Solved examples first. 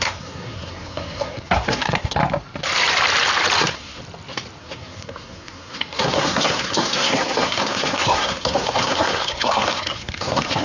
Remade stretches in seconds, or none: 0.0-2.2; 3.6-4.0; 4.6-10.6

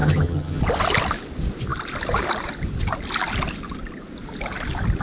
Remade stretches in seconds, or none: 0.0-0.6

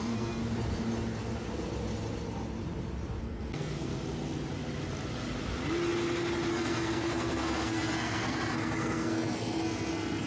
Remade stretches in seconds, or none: 0.0-0.4; 3.2-3.9; 6.5-10.3

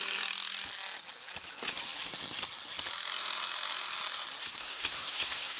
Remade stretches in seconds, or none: 4.4-5.6

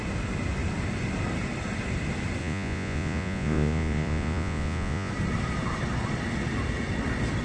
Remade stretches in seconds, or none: 2.4-5.1

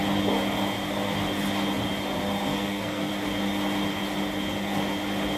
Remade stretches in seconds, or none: 2.5-3.1